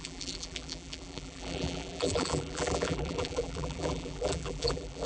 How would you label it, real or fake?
fake